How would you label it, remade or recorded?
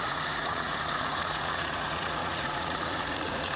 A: remade